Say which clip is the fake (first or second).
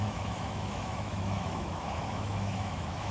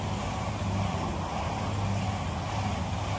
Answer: first